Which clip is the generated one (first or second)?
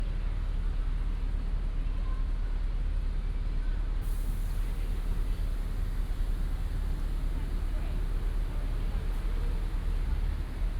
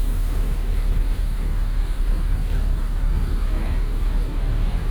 second